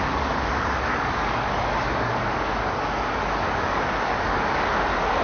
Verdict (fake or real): fake